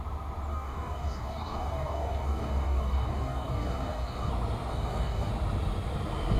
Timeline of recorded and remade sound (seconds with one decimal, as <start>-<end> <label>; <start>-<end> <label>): 0.0-0.5 recorded; 0.5-4.3 remade; 4.3-4.7 recorded; 4.7-5.3 remade; 5.3-6.4 recorded

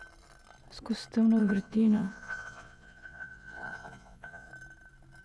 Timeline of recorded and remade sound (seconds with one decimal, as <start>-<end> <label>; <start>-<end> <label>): 0.0-1.4 recorded; 1.4-4.5 remade; 4.5-5.2 recorded

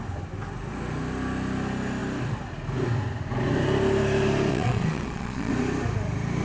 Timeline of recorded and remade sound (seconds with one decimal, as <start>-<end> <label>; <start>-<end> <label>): 0.0-4.5 recorded; 4.5-5.5 remade; 5.5-6.4 recorded

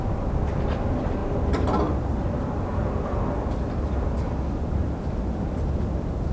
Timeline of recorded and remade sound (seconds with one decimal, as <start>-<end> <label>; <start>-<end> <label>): 0.0-6.3 recorded

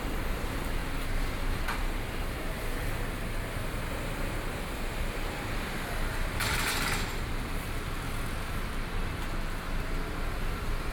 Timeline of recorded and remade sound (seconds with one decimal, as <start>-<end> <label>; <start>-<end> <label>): 0.0-0.8 recorded; 0.8-2.6 remade; 2.6-10.9 recorded

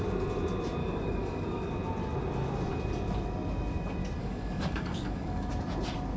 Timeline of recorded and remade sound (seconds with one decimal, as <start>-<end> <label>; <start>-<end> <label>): 0.0-0.8 recorded; 0.8-1.7 remade; 1.7-4.2 recorded; 4.2-5.5 remade; 5.5-6.2 recorded

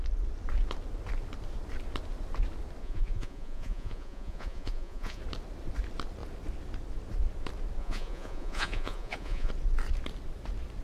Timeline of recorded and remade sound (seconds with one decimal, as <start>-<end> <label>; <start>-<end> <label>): 0.0-2.8 recorded; 2.8-5.2 remade; 5.2-7.8 recorded; 7.8-9.5 remade; 9.5-10.8 recorded